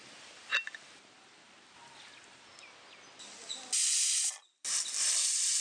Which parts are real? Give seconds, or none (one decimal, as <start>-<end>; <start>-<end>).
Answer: 0.0-5.6